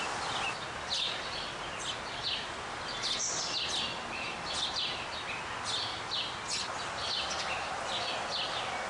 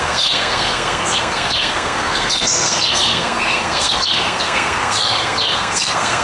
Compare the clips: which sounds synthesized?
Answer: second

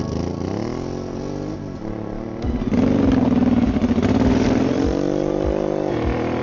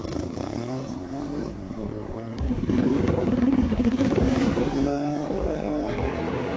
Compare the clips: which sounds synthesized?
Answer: second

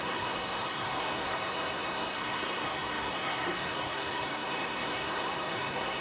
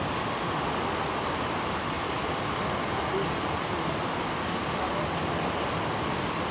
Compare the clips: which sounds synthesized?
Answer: first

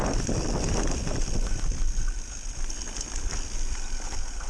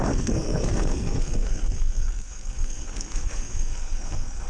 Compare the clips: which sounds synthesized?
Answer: second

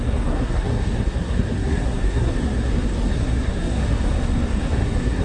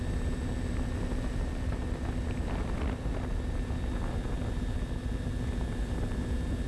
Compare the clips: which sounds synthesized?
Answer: first